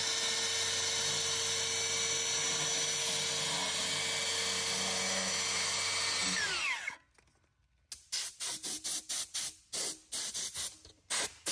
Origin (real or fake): real